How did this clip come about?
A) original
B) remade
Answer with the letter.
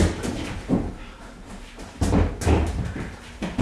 A